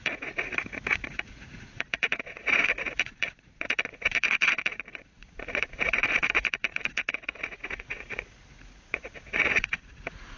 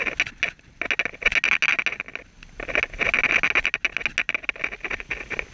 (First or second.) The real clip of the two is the second